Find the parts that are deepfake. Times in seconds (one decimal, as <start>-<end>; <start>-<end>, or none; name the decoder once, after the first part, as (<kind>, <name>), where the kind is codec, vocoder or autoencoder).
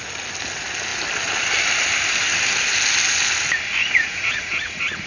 3.8-5.1 (vocoder, Vocos)